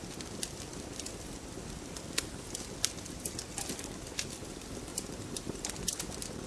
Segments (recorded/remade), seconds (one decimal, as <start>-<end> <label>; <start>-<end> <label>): 0.0-6.5 recorded